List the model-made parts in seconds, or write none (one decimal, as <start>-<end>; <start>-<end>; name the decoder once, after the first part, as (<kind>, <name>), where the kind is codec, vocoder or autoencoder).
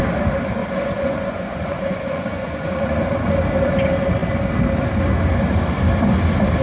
0.6-3.0 (vocoder, Vocos)